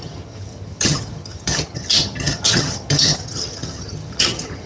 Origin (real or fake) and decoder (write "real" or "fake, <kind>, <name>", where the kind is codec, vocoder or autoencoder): fake, vocoder, HiFi-GAN